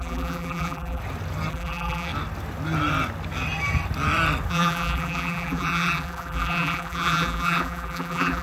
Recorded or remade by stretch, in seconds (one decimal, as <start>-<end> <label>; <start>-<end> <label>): 0.0-1.0 remade; 1.0-1.5 recorded; 1.5-2.1 remade; 2.1-4.5 recorded; 4.5-8.4 remade